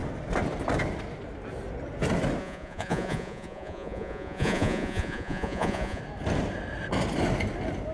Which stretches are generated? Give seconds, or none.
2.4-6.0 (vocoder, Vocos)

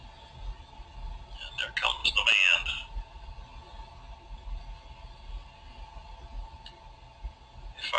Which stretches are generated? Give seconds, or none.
none

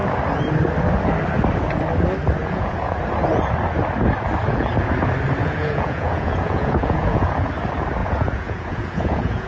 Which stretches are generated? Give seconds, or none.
2.4-3.0 (vocoder, Vocos); 5.4-7.5; 8.0-9.5